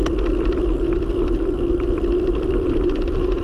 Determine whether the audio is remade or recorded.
remade